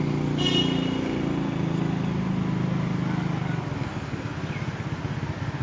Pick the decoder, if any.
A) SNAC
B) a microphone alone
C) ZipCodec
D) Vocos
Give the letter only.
B